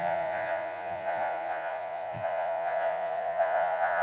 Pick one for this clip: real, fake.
fake